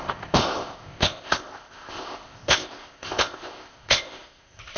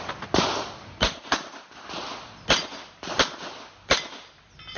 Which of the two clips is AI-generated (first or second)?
first